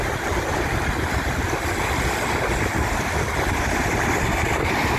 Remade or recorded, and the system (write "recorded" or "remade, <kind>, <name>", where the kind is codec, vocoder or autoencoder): recorded